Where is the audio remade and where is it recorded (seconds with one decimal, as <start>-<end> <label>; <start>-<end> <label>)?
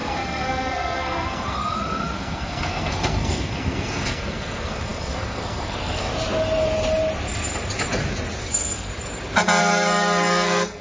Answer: 0.0-6.1 remade; 6.1-8.4 recorded; 8.4-8.9 remade; 8.9-9.6 recorded; 9.6-10.8 remade